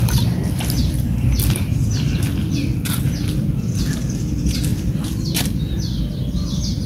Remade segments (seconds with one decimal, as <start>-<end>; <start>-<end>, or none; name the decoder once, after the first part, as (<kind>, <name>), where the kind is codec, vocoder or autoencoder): 0.8-2.4 (vocoder, BigVGAN v2); 4.7-6.0